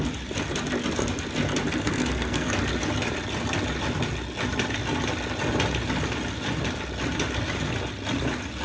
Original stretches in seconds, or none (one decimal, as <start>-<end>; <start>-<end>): 0.0-1.7; 2.5-8.6